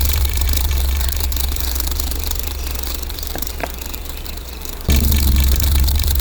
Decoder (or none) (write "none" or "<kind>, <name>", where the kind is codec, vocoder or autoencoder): vocoder, BigVGAN v2